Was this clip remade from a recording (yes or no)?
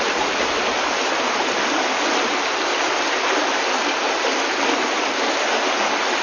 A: no